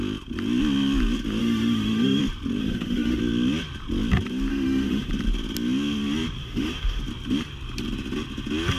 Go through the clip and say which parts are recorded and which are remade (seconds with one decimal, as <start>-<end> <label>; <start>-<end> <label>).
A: 0.0-1.4 recorded; 1.4-2.2 remade; 2.2-2.6 recorded; 2.6-3.2 remade; 3.2-4.5 recorded; 4.5-5.1 remade; 5.1-6.4 recorded; 6.4-7.0 remade; 7.0-8.8 recorded